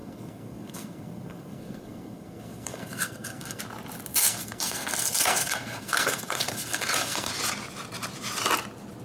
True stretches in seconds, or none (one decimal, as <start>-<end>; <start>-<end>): 3.6-4.1; 7.3-9.0